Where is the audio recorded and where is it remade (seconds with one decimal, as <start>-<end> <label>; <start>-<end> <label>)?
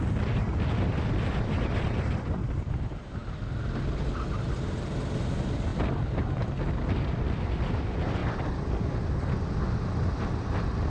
0.0-10.9 recorded